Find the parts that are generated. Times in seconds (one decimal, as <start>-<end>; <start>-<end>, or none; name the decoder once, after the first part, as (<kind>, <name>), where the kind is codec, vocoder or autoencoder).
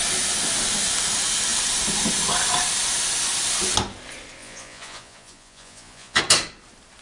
4.4-6.2 (vocoder, Vocos)